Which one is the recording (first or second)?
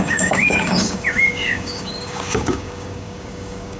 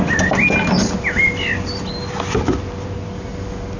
second